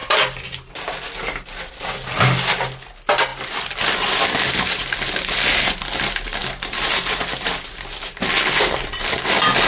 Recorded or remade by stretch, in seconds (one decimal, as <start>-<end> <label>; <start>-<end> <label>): 0.0-9.7 recorded